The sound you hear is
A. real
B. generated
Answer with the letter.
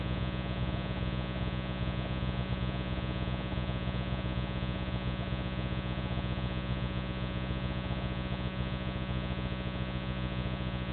B